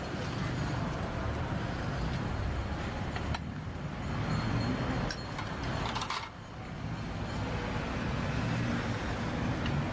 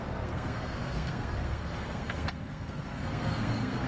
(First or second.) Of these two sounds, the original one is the first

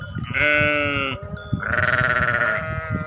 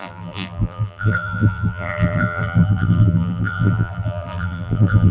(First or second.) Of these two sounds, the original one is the first